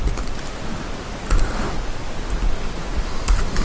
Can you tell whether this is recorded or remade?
recorded